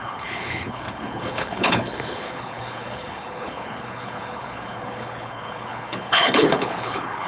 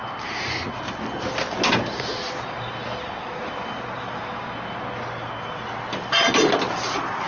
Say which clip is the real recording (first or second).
second